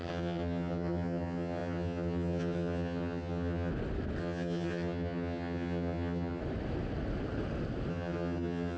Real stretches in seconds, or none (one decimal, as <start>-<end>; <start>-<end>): 3.7-4.2; 6.4-7.9